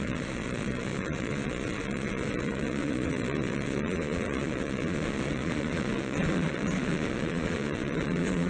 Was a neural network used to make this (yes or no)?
yes